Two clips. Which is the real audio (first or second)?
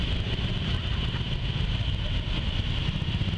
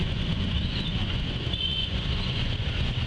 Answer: first